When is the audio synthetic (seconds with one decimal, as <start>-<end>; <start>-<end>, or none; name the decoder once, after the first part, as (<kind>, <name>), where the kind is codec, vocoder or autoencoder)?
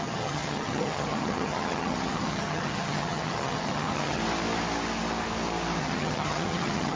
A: 0.0-4.2 (vocoder, HiFi-GAN); 5.8-7.0